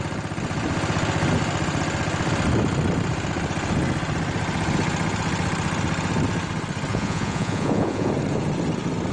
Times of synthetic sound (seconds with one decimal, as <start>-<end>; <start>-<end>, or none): 6.9-8.1